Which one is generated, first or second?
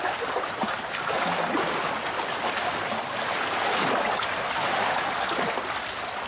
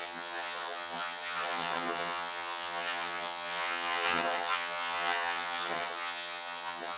second